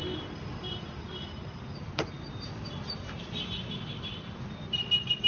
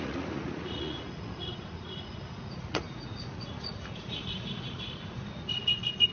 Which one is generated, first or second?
second